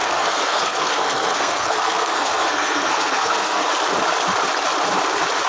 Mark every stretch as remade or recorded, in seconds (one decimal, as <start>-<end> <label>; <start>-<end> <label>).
0.0-3.6 remade; 3.6-5.5 recorded